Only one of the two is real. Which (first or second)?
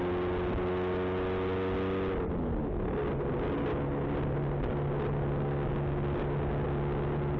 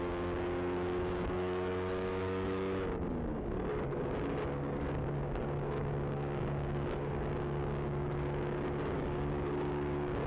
first